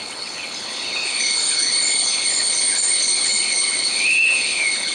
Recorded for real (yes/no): no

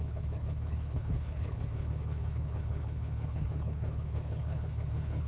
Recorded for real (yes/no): no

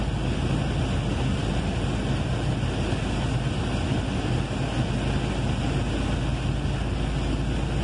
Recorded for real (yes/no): yes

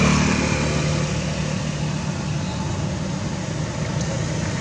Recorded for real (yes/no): yes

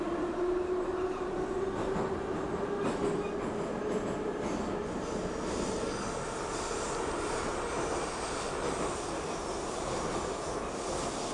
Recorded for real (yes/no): yes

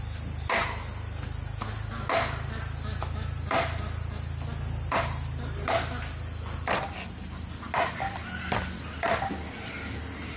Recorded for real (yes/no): yes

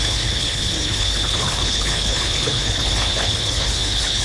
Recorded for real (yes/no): no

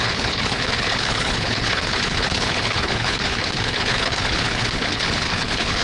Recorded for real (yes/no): no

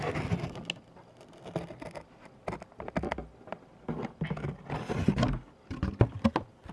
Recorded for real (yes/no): yes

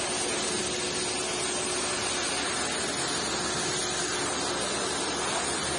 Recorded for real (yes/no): yes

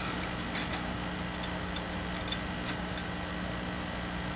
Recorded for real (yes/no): yes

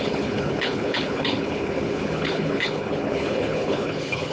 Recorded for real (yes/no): no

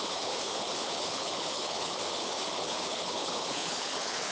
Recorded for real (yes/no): no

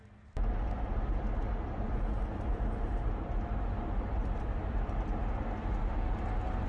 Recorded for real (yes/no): yes